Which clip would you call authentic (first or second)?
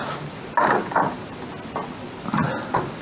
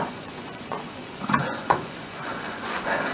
first